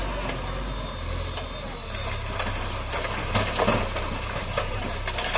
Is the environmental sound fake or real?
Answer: real